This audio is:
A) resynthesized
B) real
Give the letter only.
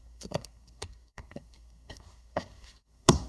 A